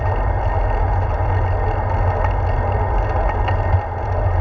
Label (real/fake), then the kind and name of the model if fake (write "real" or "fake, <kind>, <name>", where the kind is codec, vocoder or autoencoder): real